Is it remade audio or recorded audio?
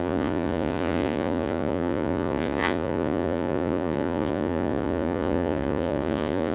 remade